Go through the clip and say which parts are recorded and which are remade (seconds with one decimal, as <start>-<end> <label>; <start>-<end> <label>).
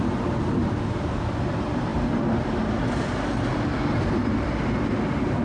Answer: 0.0-5.4 recorded